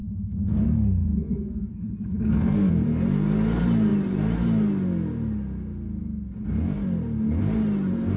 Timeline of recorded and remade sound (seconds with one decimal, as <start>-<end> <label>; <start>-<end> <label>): 0.0-2.7 remade; 2.7-8.2 recorded